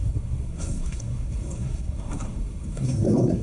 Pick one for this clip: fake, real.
fake